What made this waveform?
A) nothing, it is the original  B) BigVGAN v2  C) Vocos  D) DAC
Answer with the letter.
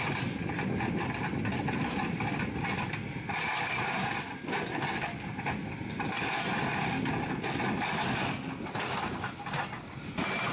A